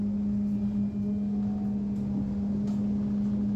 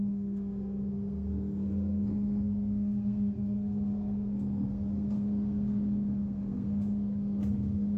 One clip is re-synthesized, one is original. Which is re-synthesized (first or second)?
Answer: second